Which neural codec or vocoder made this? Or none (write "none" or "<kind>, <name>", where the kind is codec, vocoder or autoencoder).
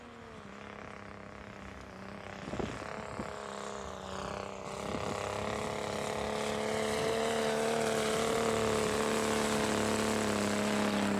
none